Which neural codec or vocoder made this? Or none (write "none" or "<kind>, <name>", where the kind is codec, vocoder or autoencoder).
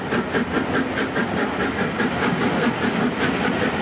none